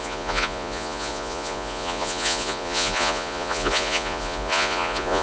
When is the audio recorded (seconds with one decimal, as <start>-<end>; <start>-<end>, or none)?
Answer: none